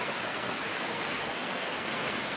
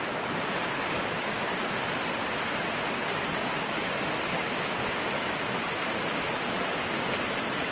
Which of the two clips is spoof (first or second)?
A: first